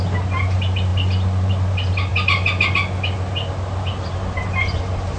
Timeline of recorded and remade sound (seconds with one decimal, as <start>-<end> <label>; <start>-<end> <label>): 0.0-5.2 recorded